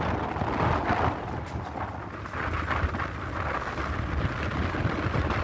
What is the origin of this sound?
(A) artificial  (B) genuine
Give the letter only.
B